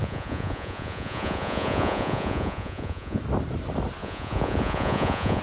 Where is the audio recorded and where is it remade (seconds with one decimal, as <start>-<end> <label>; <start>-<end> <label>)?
0.0-3.2 remade; 3.2-4.0 recorded; 4.0-5.4 remade